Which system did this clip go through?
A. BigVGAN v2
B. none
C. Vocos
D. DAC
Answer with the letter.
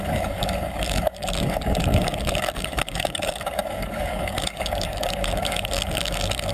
D